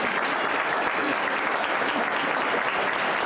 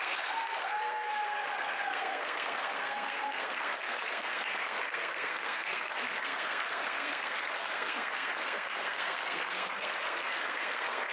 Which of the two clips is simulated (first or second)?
second